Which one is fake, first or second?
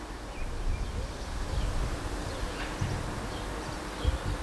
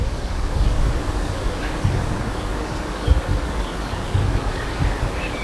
second